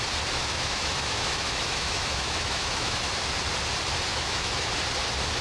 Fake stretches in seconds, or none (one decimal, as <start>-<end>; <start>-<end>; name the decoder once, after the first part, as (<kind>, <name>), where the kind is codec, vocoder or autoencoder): 0.4-3.1 (autoencoder, DAC-VAE); 4.1-4.7

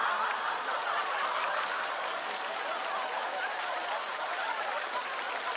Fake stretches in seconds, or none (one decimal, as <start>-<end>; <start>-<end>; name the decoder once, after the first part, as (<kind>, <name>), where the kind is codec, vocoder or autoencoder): 1.0-2.6 (codec, DAC); 4.1-5.1

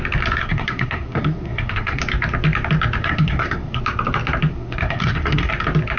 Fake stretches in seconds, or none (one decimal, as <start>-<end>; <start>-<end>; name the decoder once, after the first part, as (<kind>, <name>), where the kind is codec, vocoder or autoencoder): 0.4-2.0 (codec, SNAC); 3.0-3.8; 4.5-5.5

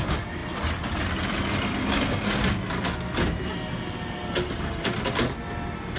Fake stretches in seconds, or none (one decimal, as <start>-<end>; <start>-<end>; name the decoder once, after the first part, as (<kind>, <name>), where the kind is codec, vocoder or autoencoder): none

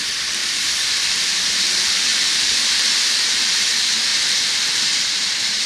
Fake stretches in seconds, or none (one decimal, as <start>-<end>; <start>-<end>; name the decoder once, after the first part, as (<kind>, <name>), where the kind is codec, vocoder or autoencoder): 0.0-0.4 (vocoder, BigVGAN v2); 1.3-4.1; 4.9-5.7

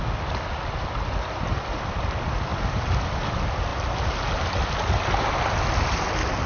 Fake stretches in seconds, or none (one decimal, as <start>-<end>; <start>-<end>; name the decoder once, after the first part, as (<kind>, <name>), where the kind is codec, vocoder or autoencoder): none